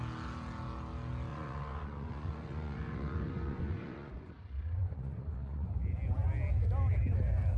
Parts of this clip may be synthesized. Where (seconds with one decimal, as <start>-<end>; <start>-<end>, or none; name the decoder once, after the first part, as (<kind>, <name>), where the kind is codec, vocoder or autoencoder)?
1.3-4.3 (vocoder, Vocos); 4.8-5.7